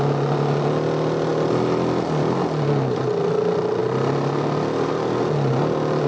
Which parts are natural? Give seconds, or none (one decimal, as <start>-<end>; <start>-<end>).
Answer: 0.0-6.1